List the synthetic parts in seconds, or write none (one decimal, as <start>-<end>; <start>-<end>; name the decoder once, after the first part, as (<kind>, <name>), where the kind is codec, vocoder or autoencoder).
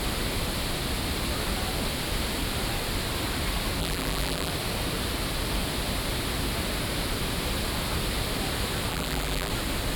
3.8-4.5 (vocoder, BigVGAN v2); 8.9-9.5